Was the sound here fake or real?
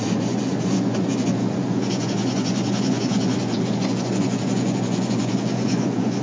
fake